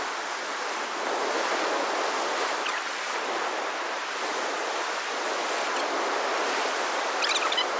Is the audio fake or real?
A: real